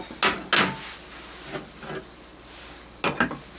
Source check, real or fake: real